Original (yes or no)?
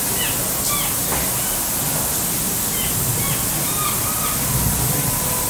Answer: yes